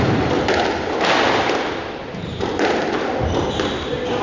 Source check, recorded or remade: remade